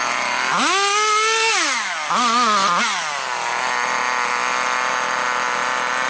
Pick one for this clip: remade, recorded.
recorded